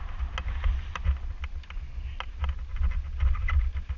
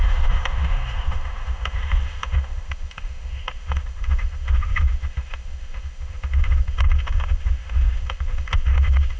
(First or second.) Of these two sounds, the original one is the first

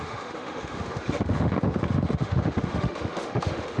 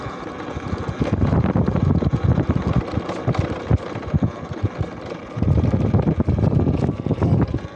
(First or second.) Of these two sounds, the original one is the second